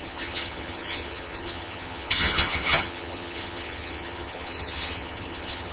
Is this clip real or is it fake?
fake